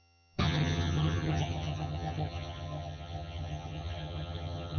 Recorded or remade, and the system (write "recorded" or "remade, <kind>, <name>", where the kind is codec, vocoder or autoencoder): remade, vocoder, HiFi-GAN